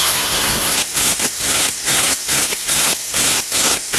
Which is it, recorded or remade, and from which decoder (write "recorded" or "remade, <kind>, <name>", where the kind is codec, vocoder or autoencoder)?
remade, codec, SNAC